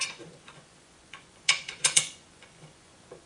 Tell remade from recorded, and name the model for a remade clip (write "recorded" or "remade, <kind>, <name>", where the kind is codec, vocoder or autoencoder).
remade, vocoder, Vocos